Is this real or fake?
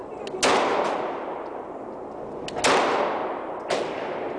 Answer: real